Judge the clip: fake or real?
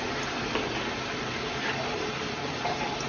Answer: real